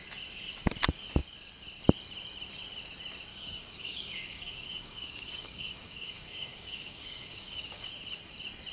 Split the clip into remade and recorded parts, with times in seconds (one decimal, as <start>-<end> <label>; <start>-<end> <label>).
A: 0.0-3.3 recorded; 3.3-7.9 remade; 7.9-8.7 recorded